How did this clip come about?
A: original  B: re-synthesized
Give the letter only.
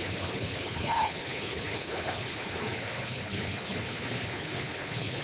B